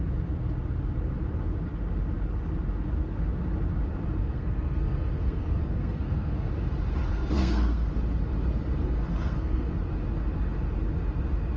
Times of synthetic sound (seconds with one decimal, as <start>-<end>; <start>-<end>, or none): 4.2-6.5; 7.1-7.9; 8.8-9.7